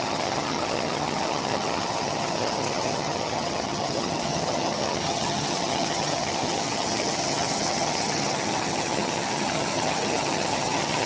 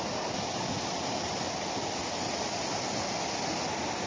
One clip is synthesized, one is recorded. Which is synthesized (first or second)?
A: first